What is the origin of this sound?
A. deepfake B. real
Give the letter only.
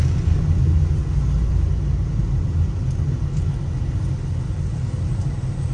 B